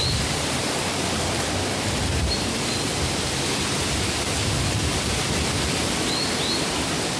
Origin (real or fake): real